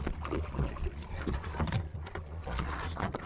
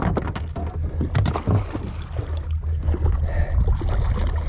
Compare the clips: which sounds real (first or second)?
second